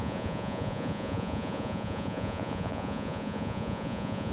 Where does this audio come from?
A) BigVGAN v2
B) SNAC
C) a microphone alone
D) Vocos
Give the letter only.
D